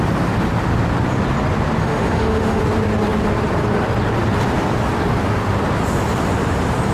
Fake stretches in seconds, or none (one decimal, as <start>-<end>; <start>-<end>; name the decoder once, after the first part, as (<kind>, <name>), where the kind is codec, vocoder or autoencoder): 1.8-2.6 (autoencoder, DAC-VAE)